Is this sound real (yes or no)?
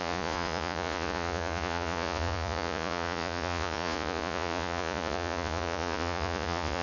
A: no